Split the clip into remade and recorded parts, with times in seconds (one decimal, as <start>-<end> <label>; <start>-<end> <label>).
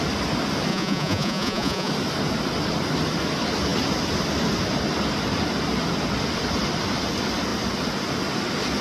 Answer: 0.0-0.7 recorded; 0.7-1.9 remade; 1.9-8.8 recorded